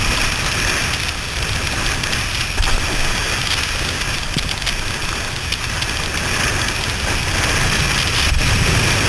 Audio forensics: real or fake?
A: real